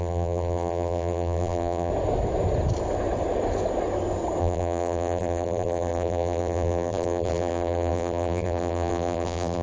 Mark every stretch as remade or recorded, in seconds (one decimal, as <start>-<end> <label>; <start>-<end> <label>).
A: 0.0-1.9 remade; 1.9-4.4 recorded; 4.4-9.6 remade

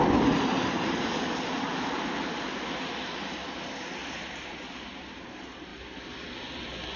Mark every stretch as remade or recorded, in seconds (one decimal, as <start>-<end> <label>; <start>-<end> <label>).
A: 0.0-5.7 recorded; 5.7-6.3 remade; 6.3-7.0 recorded

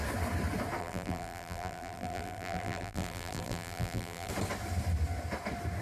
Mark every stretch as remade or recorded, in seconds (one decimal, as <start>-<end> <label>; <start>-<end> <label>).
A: 0.0-0.8 recorded; 0.8-4.3 remade; 4.3-5.8 recorded

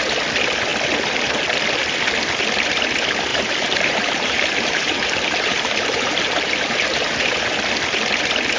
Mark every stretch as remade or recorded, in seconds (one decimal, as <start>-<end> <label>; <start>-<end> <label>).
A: 0.0-3.3 recorded; 3.3-7.7 remade; 7.7-8.6 recorded

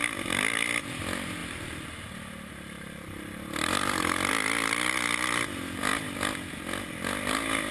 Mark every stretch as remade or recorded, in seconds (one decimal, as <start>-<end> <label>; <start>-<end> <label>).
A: 0.0-7.7 recorded

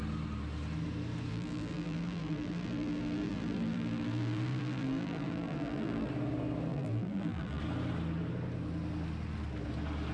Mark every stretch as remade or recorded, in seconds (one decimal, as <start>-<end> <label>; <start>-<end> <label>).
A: 0.0-1.3 recorded; 1.3-6.1 remade; 6.1-6.7 recorded; 6.7-7.6 remade; 7.6-10.1 recorded

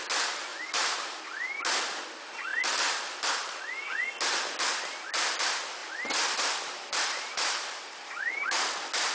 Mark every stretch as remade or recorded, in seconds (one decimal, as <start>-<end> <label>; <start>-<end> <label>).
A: 0.0-0.5 recorded; 0.5-1.2 remade; 1.2-5.8 recorded; 5.8-8.3 remade; 8.3-9.1 recorded

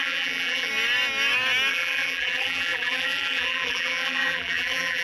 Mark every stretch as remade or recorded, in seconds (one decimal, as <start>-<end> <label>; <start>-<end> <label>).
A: 0.0-0.7 remade; 0.7-1.7 recorded; 1.7-5.0 remade